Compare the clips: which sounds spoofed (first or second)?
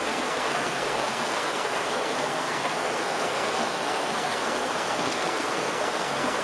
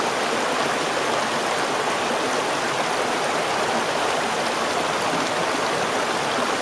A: first